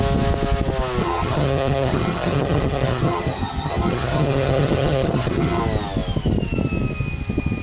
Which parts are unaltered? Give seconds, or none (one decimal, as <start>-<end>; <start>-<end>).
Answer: 0.0-1.0; 5.6-7.6